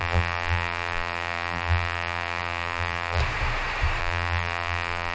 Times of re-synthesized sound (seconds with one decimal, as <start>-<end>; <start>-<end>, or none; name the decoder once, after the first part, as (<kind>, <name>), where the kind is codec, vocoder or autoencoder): 0.0-3.2 (vocoder, BigVGAN v2); 4.0-5.1